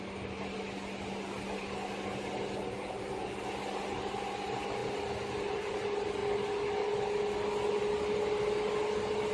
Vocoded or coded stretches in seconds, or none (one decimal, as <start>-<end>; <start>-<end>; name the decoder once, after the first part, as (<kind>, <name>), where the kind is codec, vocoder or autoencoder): none